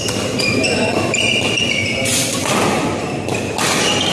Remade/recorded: recorded